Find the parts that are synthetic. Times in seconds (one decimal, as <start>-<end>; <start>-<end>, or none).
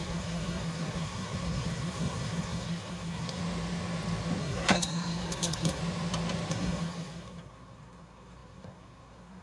0.0-3.4; 4.4-5.8; 6.5-9.4